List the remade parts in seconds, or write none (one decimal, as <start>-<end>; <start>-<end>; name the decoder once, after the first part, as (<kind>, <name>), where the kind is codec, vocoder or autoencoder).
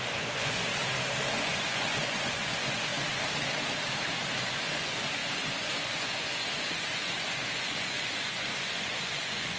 0.0-0.7 (vocoder, Vocos); 1.3-2.9; 4.1-9.6